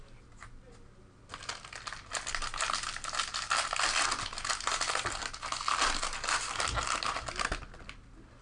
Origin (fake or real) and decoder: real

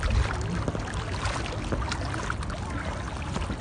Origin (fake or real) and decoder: real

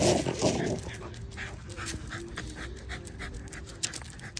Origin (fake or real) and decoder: real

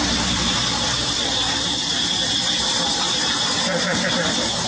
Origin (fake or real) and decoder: fake, vocoder, BigVGAN v2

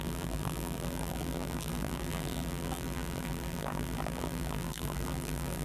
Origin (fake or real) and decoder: fake, vocoder, BigVGAN v2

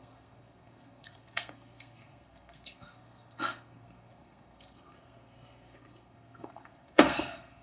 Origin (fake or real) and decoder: fake, codec, SNAC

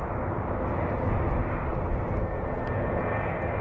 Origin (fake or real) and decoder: real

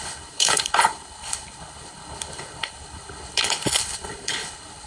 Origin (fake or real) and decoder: fake, codec, HILCodec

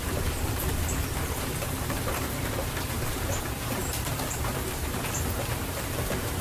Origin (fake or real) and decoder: fake, vocoder, BigVGAN v2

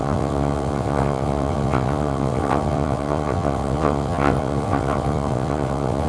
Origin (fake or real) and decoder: fake, vocoder, WaveNeXt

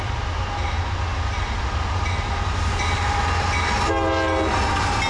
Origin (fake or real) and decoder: real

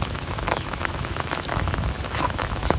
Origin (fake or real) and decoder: fake, autoencoder, DAC-VAE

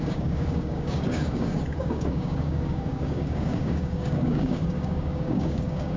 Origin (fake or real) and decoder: fake, codec, DAC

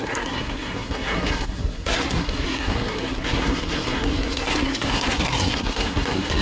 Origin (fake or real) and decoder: fake, codec, SNAC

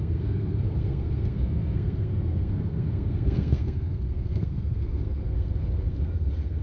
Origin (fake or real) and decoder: fake, codec, SNAC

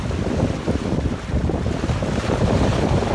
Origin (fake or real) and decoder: fake, vocoder, BigVGAN v2